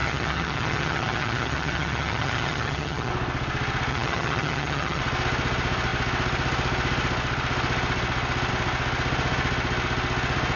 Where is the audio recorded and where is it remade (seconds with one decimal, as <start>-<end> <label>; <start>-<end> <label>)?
0.0-3.1 remade; 3.1-3.9 recorded; 3.9-5.0 remade; 5.0-10.6 recorded